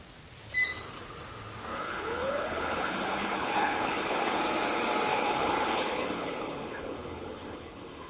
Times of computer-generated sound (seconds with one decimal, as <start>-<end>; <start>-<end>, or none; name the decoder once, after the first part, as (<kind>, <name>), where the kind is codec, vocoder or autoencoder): 1.7-4.4 (codec, HILCodec); 5.1-8.1

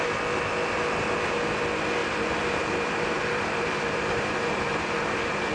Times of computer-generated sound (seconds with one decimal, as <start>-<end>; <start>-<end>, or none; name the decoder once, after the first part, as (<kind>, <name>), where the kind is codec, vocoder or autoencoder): 2.0-5.5 (vocoder, BigVGAN v2)

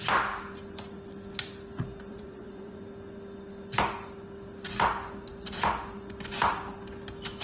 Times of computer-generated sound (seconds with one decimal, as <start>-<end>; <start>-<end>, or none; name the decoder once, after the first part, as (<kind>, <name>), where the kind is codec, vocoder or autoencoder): 2.1-2.8 (vocoder, Vocos)

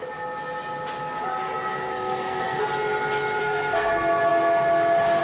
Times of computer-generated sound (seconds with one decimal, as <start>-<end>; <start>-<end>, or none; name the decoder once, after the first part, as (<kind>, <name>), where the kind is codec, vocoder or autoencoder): 1.9-2.6 (codec, SNAC); 3.4-3.9

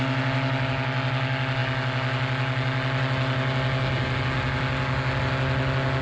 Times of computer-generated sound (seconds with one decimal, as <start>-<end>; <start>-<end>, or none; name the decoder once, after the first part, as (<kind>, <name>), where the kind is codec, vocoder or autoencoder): none

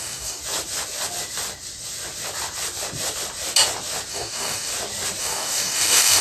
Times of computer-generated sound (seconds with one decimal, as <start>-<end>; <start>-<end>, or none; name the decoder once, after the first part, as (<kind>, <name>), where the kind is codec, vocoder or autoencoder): 0.0-0.4 (codec, DAC); 4.1-4.7; 5.2-6.2